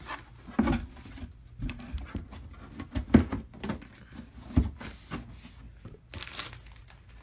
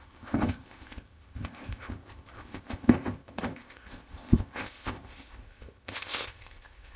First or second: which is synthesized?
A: second